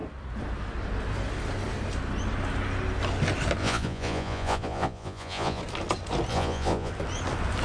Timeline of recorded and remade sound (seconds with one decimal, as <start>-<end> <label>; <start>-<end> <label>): 0.0-3.6 recorded; 3.6-5.6 remade; 5.6-6.3 recorded; 6.3-6.9 remade; 6.9-7.6 recorded